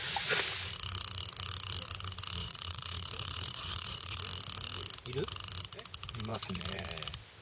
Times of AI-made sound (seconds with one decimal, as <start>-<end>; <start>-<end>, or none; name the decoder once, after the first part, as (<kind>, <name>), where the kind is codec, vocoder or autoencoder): 2.4-4.2 (vocoder, Vocos); 6.3-6.9